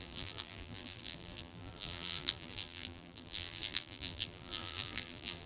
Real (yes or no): no